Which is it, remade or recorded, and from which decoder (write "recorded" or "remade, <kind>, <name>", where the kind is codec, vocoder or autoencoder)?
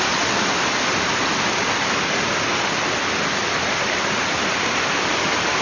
recorded